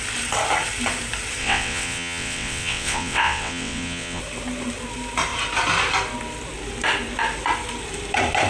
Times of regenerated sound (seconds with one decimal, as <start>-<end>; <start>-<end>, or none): 1.4-4.2